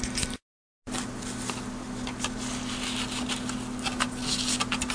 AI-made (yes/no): no